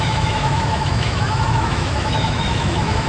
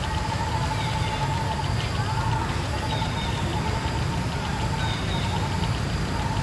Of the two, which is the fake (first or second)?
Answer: first